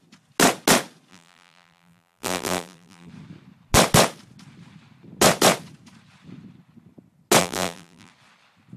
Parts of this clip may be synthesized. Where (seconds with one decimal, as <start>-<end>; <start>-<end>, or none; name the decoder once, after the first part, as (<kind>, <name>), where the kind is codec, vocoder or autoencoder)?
1.1-3.1 (vocoder, BigVGAN v2); 7.4-8.1